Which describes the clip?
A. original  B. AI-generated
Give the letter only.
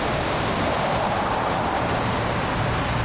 A